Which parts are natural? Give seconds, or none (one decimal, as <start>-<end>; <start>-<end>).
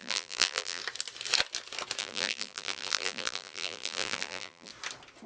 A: 0.8-2.0; 4.7-5.3